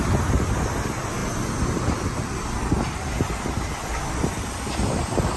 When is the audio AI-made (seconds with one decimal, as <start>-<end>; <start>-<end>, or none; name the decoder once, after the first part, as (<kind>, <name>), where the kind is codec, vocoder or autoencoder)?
none